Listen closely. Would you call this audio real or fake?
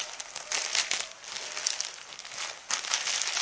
real